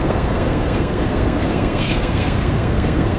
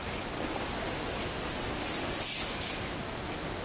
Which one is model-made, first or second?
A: first